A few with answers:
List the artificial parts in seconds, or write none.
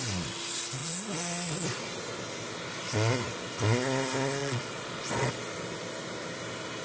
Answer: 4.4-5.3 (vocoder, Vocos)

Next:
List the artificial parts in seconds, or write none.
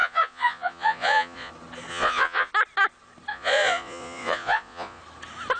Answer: 0.0-1.5 (vocoder, Vocos); 1.9-2.5; 3.3-5.0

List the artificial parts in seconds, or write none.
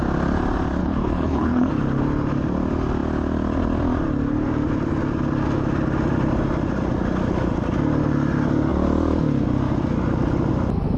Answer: 0.8-1.7 (codec, HILCodec)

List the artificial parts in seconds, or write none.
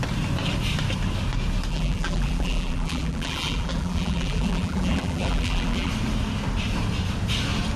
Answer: 1.7-5.9 (vocoder, BigVGAN v2)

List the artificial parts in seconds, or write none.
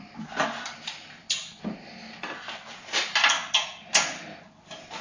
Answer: none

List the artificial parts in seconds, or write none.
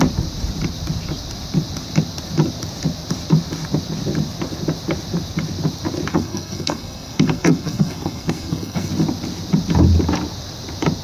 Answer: 6.1-8.9 (codec, SNAC)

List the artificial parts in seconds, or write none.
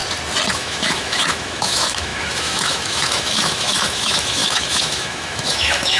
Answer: 0.5-6.0 (autoencoder, DAC-VAE)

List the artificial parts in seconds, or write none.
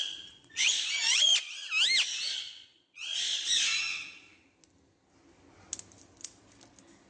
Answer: 0.0-1.3 (vocoder, Vocos); 2.3-3.7